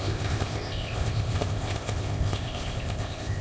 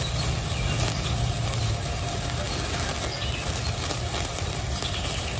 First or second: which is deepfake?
first